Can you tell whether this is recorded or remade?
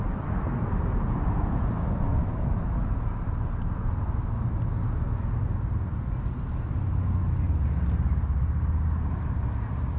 recorded